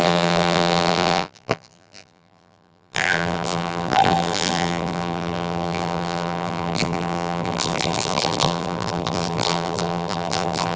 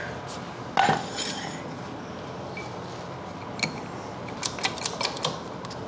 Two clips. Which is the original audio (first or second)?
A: second